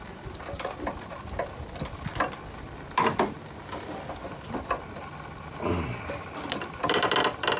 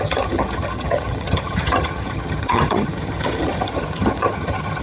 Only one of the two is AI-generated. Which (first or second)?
second